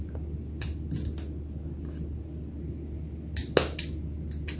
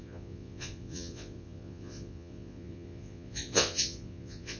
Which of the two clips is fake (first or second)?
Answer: second